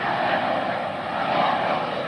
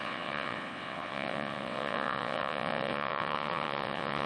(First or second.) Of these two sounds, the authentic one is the first